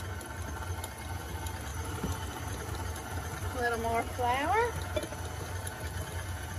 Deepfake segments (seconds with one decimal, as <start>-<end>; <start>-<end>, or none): 1.7-4.0; 5.1-5.7